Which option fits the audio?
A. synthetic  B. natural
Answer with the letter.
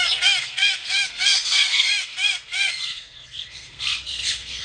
A